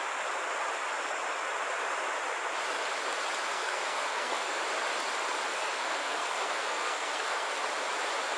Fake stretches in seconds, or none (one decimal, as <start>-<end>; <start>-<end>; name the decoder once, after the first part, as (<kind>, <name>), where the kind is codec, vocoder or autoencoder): 3.5-4.6 (codec, SNAC); 5.5-7.6